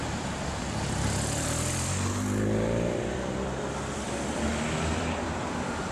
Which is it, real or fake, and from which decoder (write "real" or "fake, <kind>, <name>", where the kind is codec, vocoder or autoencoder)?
fake, vocoder, BigVGAN v2